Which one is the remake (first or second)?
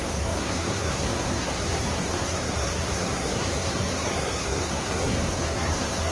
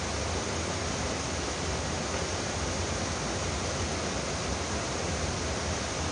first